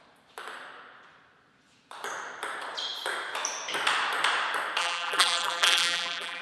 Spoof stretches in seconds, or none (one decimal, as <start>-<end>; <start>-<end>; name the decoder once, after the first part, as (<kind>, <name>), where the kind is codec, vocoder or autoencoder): 4.8-6.4 (vocoder, BigVGAN v2)